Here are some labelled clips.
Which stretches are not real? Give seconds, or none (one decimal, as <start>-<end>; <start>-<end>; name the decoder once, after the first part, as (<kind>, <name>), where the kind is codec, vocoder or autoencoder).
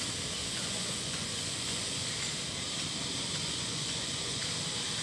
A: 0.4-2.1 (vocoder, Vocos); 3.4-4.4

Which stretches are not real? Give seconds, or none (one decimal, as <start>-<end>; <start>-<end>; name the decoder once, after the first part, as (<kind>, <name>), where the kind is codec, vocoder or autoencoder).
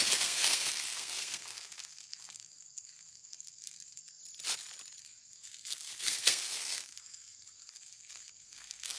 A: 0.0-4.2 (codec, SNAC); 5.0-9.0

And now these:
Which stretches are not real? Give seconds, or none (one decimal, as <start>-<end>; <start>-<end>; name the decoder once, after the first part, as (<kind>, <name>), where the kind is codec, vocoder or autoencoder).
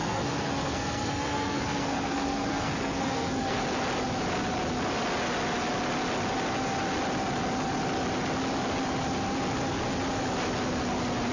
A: 0.0-3.6 (codec, SNAC)